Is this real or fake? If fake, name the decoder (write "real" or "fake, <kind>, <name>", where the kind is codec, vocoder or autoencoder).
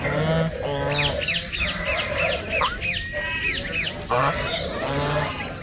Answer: real